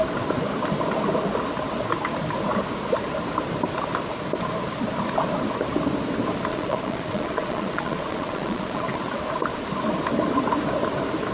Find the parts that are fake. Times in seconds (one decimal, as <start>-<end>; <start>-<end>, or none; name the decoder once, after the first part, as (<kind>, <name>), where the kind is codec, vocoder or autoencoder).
6.5-9.2 (vocoder, Vocos)